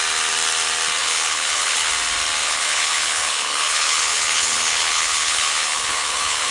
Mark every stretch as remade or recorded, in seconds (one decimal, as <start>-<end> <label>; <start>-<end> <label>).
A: 0.0-1.0 recorded; 1.0-1.9 remade; 1.9-2.4 recorded; 2.4-6.5 remade